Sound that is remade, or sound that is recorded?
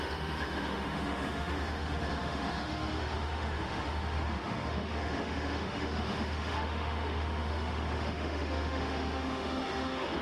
remade